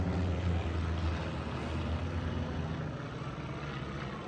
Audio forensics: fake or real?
real